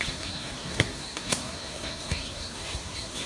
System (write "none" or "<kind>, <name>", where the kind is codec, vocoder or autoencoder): codec, SNAC